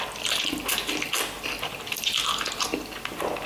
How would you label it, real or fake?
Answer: real